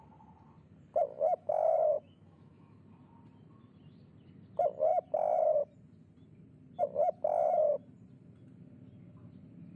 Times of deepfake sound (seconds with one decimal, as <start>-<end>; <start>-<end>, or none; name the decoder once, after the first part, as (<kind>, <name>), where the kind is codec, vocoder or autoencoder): 1.1-2.8 (autoencoder, DAC-VAE)